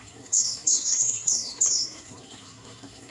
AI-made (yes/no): yes